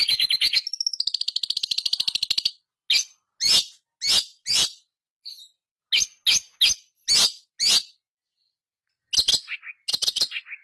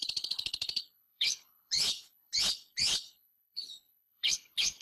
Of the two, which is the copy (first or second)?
second